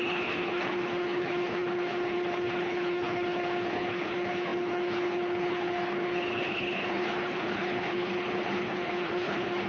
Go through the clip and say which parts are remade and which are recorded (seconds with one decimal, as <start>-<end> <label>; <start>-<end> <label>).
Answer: 0.0-9.7 remade